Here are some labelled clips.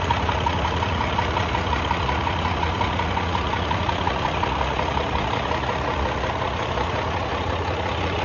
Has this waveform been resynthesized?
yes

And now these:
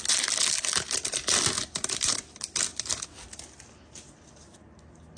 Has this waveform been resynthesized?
no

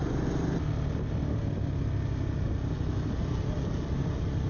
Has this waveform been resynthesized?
no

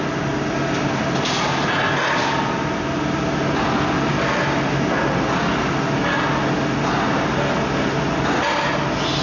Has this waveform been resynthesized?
no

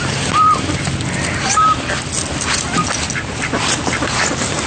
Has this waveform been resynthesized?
no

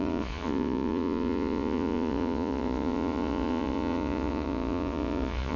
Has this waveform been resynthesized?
yes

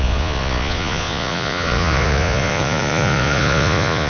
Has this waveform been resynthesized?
yes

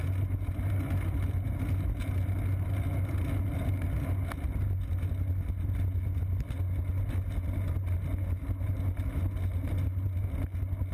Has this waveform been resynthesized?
no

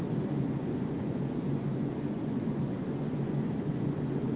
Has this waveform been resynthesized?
yes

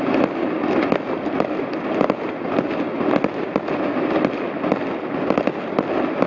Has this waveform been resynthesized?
no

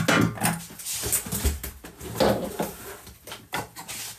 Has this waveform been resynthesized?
no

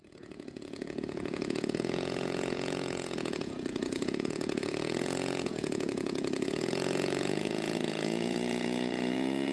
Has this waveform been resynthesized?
yes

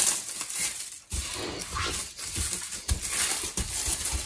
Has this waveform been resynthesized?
no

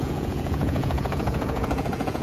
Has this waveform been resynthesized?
yes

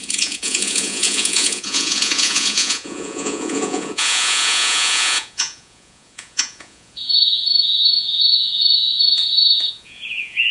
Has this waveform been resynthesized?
yes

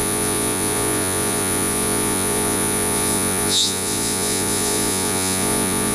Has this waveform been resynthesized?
yes